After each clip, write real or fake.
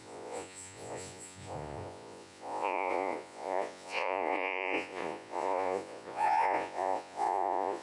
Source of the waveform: fake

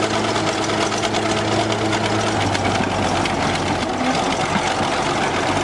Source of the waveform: real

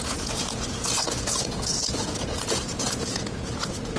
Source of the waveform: fake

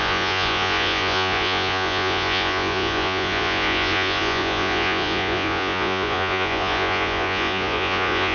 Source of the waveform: fake